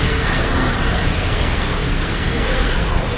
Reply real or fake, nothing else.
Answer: fake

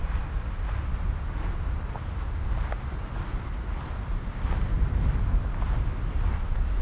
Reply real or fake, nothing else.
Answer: real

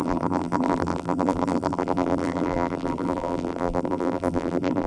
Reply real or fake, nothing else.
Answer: fake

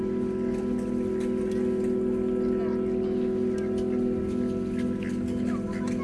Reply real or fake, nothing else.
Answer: real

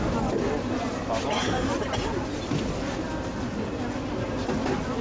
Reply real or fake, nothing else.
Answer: real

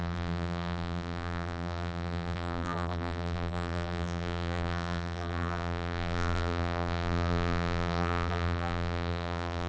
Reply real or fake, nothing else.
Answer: fake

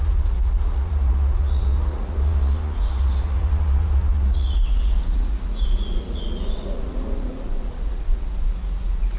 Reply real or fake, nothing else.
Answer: fake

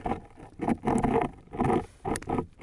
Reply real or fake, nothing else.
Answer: real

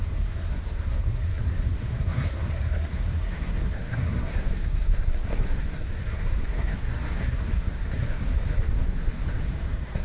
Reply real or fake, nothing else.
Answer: fake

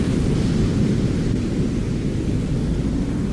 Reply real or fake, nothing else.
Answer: real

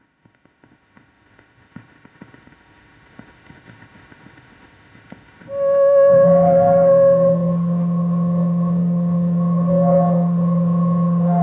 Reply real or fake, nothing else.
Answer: fake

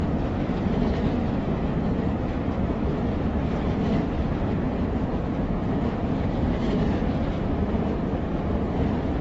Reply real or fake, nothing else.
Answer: fake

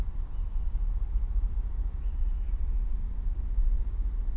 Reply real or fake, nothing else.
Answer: fake